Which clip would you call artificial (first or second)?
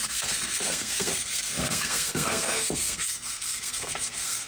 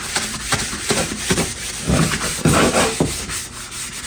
first